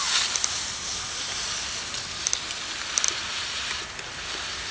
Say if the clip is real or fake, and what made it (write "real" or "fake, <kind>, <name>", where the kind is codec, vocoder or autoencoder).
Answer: real